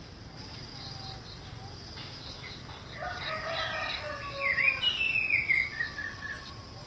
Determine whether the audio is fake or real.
real